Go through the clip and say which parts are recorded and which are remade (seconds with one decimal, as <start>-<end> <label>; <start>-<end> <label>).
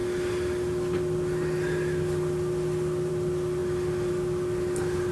0.0-5.1 recorded